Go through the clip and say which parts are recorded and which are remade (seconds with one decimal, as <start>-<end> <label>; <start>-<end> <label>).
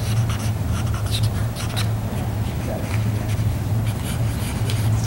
0.0-1.4 remade; 1.4-3.5 recorded; 3.5-5.1 remade